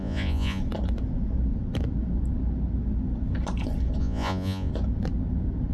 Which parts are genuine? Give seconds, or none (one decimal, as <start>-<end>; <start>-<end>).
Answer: 0.6-4.0; 4.7-5.7